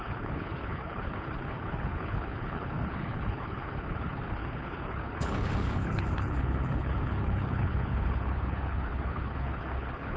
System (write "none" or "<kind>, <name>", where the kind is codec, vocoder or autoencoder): codec, HILCodec